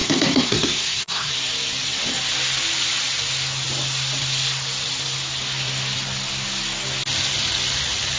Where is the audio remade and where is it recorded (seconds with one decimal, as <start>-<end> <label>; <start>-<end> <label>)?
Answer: 0.0-1.3 remade; 1.3-8.2 recorded